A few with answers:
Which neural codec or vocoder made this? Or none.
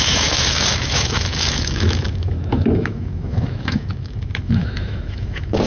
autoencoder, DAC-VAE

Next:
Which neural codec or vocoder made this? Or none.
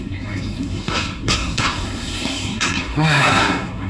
codec, SNAC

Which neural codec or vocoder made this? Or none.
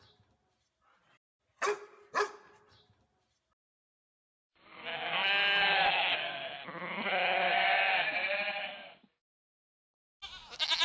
none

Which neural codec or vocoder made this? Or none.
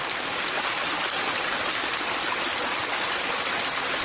none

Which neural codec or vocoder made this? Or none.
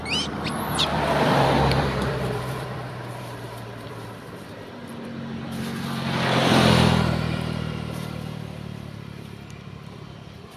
vocoder, BigVGAN v2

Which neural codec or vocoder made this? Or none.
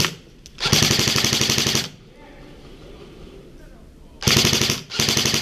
none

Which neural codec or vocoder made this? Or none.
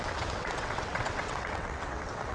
vocoder, WaveNeXt